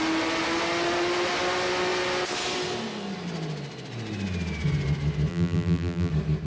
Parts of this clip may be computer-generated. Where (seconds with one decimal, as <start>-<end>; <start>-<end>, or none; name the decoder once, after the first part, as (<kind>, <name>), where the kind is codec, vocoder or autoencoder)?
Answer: 5.3-6.1 (vocoder, BigVGAN v2)